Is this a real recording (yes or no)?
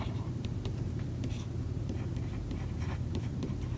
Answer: no